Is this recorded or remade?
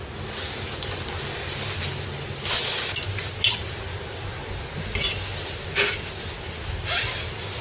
recorded